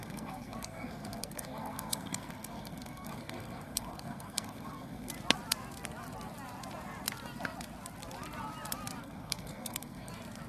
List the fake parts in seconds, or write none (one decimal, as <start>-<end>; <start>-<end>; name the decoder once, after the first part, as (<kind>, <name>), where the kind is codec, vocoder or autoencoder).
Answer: 0.0-5.1 (codec, SNAC); 9.0-10.1